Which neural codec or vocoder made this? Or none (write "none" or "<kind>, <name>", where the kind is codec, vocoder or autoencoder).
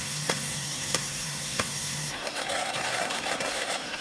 codec, SNAC